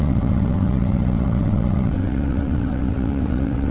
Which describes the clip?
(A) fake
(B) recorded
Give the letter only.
A